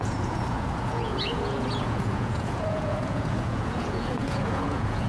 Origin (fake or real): fake